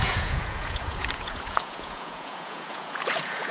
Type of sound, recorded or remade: remade